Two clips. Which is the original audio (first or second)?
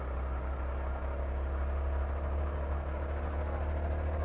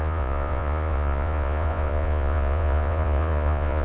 first